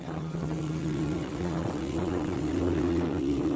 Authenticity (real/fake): fake